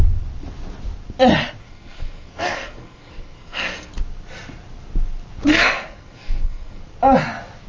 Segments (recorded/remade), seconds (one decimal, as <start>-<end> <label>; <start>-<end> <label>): 0.0-1.6 recorded; 1.6-3.9 remade; 3.9-5.5 recorded; 5.5-6.8 remade; 6.8-7.7 recorded